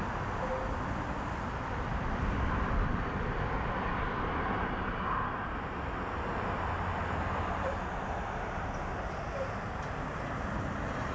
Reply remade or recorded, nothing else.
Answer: recorded